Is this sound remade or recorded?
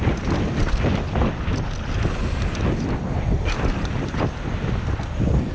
recorded